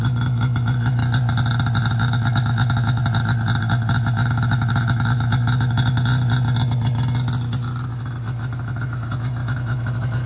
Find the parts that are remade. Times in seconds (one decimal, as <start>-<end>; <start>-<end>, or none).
0.0-1.0; 1.9-3.0; 3.6-6.1; 7.9-10.3

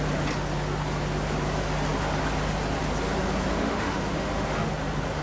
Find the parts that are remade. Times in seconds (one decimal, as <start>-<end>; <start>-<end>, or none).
3.5-4.7

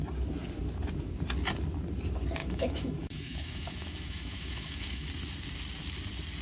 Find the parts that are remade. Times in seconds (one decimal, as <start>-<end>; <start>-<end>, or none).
2.4-5.1

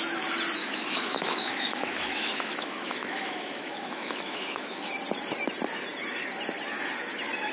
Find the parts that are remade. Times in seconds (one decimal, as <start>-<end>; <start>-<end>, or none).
0.6-4.9